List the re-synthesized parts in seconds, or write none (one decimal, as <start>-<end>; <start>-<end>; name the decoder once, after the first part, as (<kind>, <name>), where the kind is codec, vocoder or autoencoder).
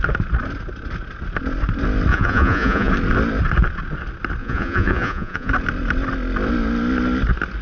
2.1-2.9 (vocoder, Vocos); 4.4-5.5